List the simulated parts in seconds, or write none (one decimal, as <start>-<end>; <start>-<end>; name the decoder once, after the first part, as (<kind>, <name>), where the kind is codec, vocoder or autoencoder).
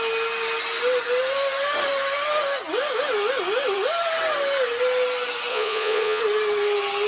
5.5-6.2 (vocoder, Vocos)